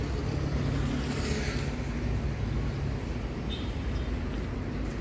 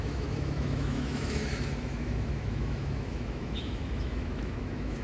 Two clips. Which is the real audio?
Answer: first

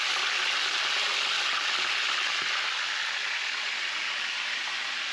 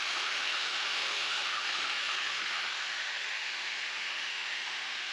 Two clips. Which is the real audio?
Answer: first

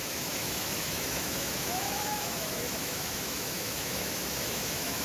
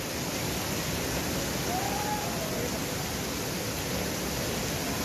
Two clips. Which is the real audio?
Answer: second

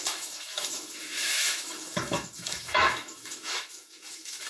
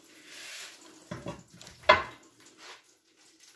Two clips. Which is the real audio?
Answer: second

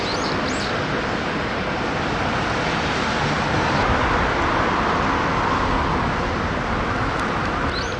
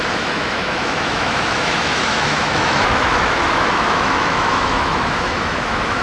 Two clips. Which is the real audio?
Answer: first